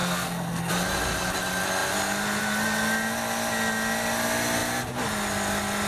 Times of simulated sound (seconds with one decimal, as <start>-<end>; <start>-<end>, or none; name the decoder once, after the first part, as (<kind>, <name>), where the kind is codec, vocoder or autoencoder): 0.0-0.7 (codec, SNAC)